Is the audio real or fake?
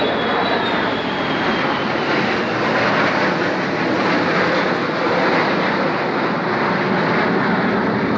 real